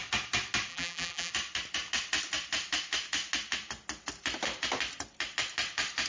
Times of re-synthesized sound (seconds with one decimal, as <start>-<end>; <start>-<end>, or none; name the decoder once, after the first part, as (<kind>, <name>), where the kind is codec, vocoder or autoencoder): 0.7-1.3 (vocoder, BigVGAN v2)